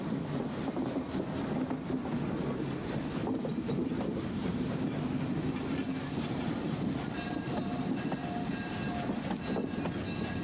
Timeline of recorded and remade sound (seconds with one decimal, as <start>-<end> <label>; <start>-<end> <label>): 0.0-3.2 recorded; 3.2-4.8 remade; 4.8-6.0 recorded; 6.0-8.1 remade; 8.1-10.4 recorded